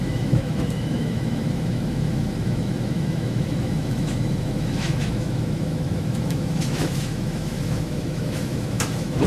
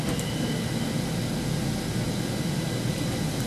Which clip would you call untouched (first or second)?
second